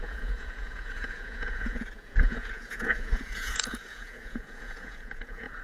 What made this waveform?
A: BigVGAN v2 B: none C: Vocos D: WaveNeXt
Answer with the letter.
C